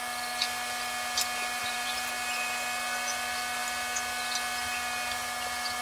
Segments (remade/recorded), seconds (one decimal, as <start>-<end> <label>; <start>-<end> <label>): 0.0-1.6 recorded; 1.6-2.1 remade; 2.1-5.8 recorded

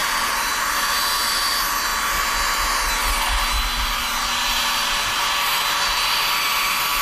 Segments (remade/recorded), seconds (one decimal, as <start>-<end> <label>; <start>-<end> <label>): 0.0-7.0 recorded

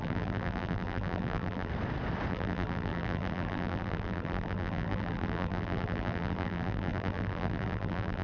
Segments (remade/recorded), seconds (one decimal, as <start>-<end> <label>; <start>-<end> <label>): 0.0-1.7 remade; 1.7-2.3 recorded; 2.3-8.2 remade

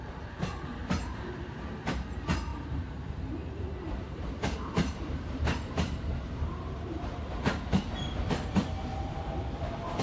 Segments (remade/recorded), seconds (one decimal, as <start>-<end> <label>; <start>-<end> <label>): 0.0-10.0 remade

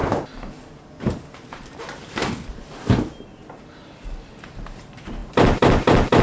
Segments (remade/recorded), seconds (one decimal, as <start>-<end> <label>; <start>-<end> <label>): 0.0-1.5 recorded; 1.5-2.2 remade; 2.2-4.3 recorded; 4.3-6.2 remade

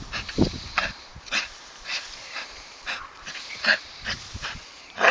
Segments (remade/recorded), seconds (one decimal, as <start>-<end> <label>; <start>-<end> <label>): 0.0-5.1 remade